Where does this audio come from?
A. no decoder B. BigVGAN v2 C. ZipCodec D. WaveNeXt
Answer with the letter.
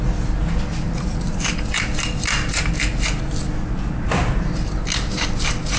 A